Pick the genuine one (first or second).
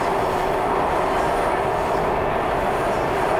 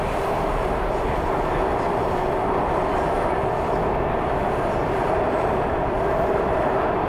first